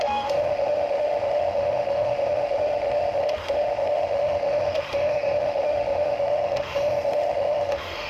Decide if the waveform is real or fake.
fake